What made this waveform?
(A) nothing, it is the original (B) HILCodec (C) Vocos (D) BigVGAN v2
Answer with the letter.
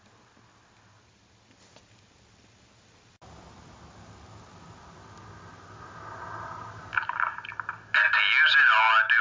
A